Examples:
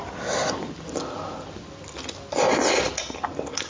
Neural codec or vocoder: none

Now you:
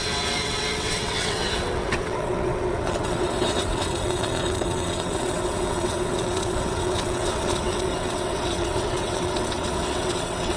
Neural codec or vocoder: vocoder, WaveNeXt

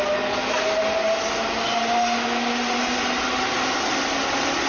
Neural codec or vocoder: none